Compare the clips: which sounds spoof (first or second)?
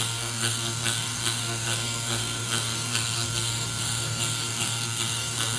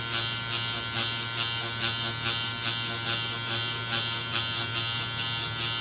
first